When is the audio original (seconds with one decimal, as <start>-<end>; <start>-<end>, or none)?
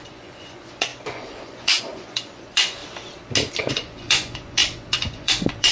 2.8-3.7